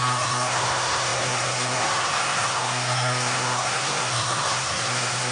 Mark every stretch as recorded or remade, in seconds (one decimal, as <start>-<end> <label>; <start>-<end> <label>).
0.0-5.3 remade

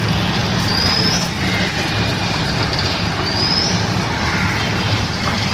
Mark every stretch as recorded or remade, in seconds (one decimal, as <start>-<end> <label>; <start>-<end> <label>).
0.0-4.7 recorded; 4.7-5.5 remade